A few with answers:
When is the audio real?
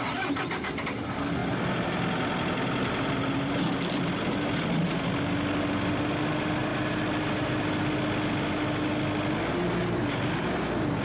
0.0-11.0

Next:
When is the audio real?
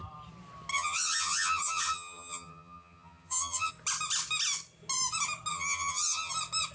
0.0-0.7; 3.7-5.5; 6.3-6.7